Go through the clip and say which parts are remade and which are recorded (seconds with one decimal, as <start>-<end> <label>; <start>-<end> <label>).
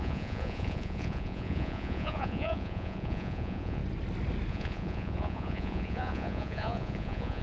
0.0-3.8 remade; 3.8-4.5 recorded; 4.5-7.4 remade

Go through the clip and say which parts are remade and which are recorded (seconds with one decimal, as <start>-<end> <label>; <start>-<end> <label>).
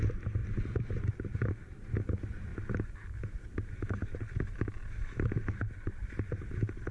0.0-6.9 recorded